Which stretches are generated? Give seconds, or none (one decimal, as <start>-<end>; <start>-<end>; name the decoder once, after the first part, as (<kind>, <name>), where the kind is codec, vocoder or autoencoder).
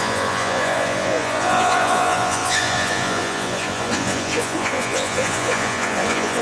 0.0-6.4 (vocoder, Vocos)